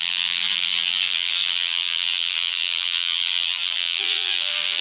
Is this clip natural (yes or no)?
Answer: no